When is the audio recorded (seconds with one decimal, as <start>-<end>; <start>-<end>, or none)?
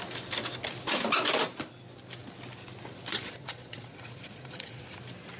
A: 0.0-3.1; 4.8-5.4